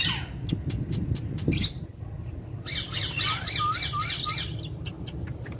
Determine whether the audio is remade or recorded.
recorded